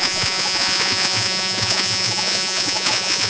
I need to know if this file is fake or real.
fake